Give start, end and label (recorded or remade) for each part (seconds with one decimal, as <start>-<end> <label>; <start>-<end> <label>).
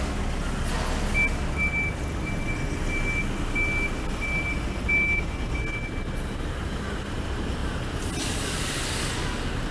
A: 0.0-9.7 recorded